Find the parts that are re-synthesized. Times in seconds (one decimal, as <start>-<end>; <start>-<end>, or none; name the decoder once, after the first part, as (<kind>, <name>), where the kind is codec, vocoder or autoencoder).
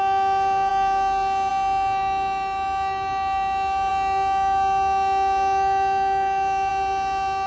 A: none